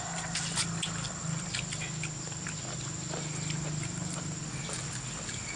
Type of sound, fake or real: real